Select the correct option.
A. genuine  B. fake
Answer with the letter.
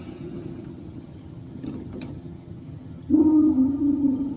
B